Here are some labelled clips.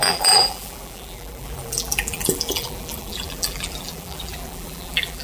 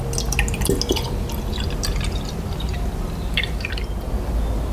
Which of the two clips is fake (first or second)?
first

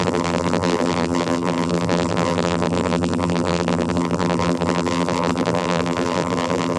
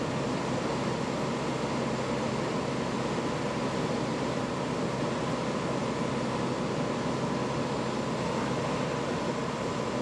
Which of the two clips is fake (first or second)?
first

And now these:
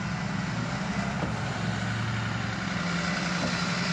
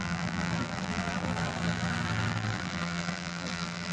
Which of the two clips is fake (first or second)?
second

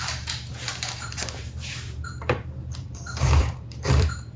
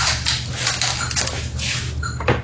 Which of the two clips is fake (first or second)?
first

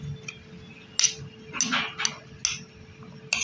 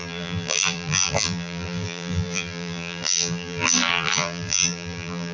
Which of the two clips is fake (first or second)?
second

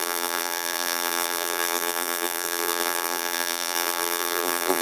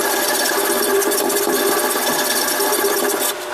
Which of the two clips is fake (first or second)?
first